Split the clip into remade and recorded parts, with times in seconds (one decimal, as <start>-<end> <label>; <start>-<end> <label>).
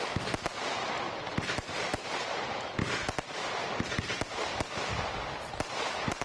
0.0-1.3 recorded; 1.3-2.8 remade; 2.8-6.2 recorded